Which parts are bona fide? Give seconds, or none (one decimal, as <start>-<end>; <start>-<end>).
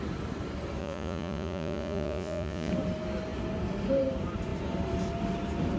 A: 0.0-0.8; 2.7-5.8